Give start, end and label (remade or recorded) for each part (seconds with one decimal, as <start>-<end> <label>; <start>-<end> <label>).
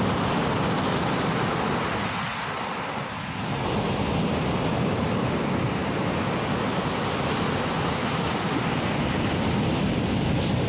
0.0-10.7 recorded